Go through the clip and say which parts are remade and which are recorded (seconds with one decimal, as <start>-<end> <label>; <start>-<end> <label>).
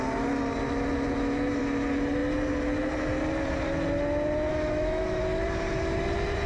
0.0-4.5 recorded; 4.5-5.2 remade; 5.2-6.5 recorded